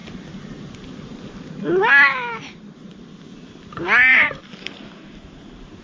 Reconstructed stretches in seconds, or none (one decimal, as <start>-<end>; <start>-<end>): 4.1-5.8

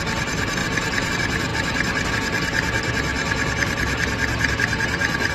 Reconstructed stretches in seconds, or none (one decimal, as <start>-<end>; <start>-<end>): 0.6-1.1; 1.5-2.1

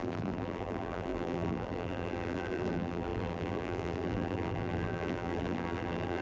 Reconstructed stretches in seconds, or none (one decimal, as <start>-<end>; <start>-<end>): 0.0-6.2

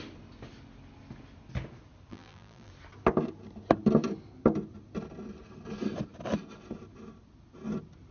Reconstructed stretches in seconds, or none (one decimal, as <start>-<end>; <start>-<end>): 2.1-2.7

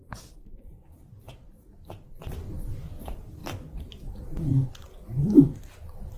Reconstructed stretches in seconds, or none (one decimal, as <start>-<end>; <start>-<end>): none

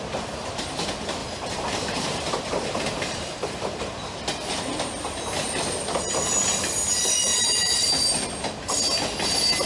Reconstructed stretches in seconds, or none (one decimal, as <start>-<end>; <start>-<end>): 1.2-3.8; 7.3-7.9

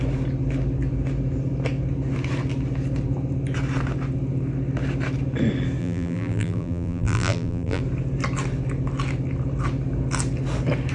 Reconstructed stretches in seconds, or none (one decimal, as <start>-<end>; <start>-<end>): 5.8-7.8

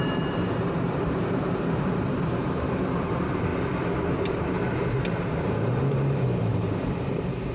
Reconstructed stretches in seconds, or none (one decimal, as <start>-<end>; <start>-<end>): 0.0-3.5; 4.2-7.5